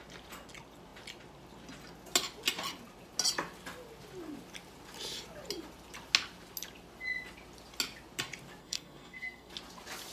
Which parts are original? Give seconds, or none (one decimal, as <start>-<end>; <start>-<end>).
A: 0.0-8.6; 9.5-10.1